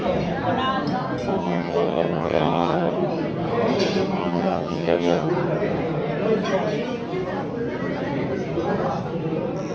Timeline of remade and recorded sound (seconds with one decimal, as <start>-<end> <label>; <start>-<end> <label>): 0.0-1.4 recorded; 1.4-2.9 remade; 2.9-4.2 recorded; 4.2-5.3 remade; 5.3-9.7 recorded